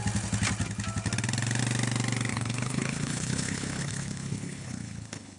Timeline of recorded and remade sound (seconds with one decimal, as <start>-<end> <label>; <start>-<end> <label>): 0.0-2.3 recorded; 2.3-5.4 remade